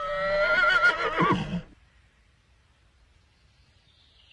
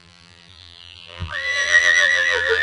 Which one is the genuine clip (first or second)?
first